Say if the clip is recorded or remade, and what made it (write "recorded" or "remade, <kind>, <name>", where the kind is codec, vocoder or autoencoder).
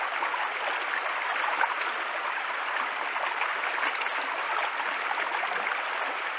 recorded